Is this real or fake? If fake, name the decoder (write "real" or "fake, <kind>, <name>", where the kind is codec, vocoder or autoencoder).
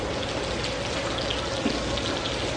real